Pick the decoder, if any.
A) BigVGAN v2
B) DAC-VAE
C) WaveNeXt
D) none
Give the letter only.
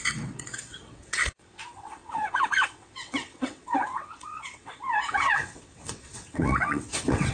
C